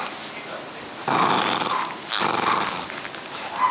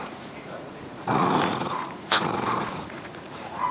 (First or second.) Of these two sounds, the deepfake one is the second